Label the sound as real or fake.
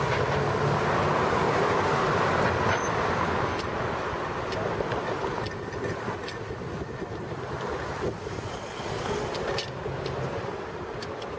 real